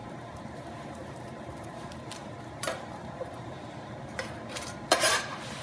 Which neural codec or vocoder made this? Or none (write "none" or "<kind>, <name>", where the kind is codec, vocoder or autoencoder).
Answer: vocoder, BigVGAN v2